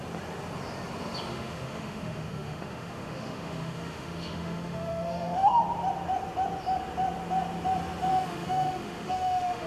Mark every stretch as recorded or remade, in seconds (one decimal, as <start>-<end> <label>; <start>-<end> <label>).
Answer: 0.0-1.3 recorded; 1.3-5.6 remade; 5.6-8.1 recorded; 8.1-9.7 remade